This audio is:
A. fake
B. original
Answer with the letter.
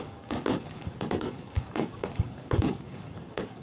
A